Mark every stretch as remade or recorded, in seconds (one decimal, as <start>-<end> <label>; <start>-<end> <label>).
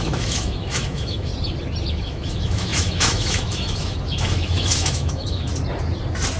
0.0-1.3 remade; 1.3-1.9 recorded; 1.9-5.5 remade; 5.5-6.4 recorded